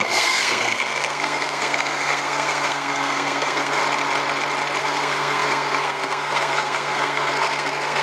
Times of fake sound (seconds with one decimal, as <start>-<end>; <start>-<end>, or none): 0.0-3.8; 4.8-8.0

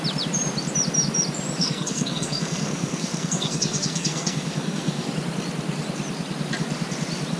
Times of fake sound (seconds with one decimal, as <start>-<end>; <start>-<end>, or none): 1.6-5.1

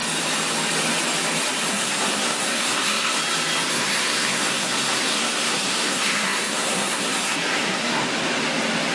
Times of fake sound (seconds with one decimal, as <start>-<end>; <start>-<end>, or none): 1.7-3.1; 3.7-8.0

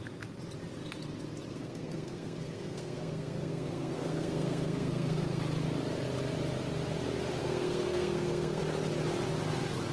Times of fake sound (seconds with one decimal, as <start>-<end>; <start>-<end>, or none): 1.5-5.4; 7.4-8.6